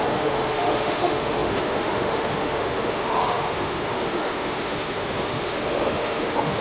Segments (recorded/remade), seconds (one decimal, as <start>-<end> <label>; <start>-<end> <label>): 0.0-6.6 remade